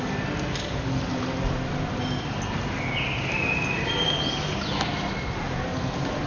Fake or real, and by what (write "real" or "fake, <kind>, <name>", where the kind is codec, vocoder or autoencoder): real